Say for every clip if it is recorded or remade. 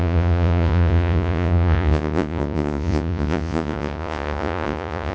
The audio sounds remade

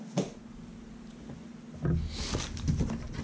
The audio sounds recorded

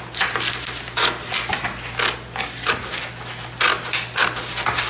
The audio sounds recorded